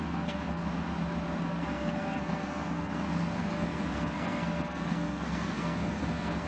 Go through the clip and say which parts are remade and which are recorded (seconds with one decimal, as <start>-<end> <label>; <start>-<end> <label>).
0.0-0.6 remade; 0.6-1.4 recorded; 1.4-6.5 remade